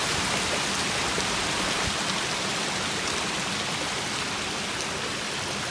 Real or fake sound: real